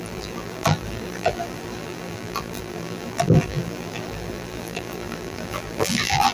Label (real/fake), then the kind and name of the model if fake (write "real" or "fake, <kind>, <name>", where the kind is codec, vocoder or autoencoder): fake, vocoder, BigVGAN v2